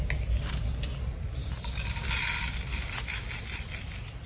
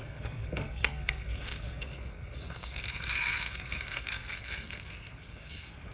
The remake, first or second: second